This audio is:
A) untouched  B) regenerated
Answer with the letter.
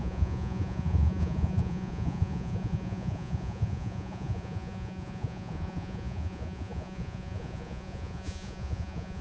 B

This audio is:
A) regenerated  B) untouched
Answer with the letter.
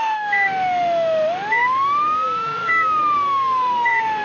A